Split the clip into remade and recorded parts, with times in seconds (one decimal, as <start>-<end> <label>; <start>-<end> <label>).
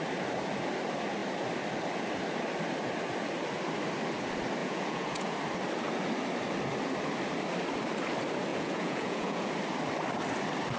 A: 0.0-4.6 recorded; 4.6-5.4 remade; 5.4-8.5 recorded; 8.5-9.5 remade; 9.5-10.8 recorded